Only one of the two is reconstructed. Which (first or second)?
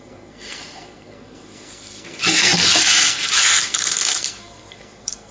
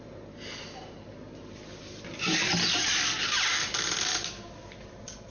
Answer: first